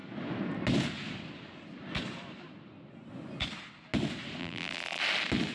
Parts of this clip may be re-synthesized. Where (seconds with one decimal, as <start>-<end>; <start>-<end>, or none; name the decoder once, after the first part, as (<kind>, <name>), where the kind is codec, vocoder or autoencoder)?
4.4-5.0 (vocoder, BigVGAN v2)